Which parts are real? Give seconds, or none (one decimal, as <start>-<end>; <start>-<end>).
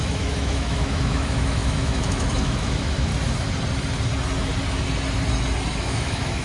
3.1-5.8